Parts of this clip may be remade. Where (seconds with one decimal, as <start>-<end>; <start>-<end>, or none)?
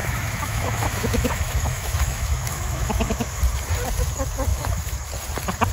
0.0-3.4; 4.5-5.1